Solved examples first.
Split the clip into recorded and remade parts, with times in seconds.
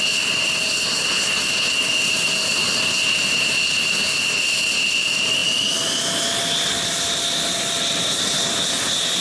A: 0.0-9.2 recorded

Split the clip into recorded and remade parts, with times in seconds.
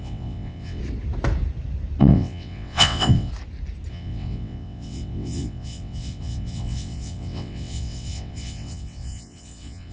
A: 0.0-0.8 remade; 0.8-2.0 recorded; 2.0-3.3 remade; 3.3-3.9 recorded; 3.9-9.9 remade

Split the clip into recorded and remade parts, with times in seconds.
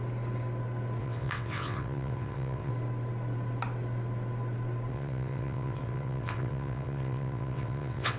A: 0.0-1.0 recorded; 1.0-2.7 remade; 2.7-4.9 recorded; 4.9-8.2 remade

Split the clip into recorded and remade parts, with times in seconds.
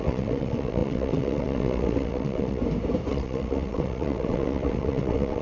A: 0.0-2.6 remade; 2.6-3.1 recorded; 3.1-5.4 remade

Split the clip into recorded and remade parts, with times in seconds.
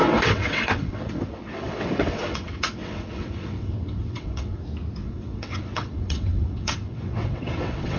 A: 0.0-4.6 remade; 4.6-5.0 recorded; 5.0-8.0 remade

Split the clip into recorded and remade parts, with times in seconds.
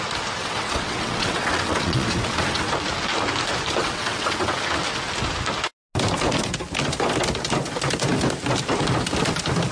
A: 0.0-0.4 recorded; 0.4-2.7 remade; 2.7-3.8 recorded; 3.8-4.6 remade; 4.6-9.7 recorded